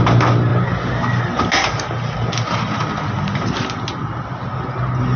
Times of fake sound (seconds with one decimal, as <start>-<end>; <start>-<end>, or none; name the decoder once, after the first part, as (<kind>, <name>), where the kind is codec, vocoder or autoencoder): none